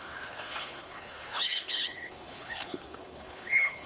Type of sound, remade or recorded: remade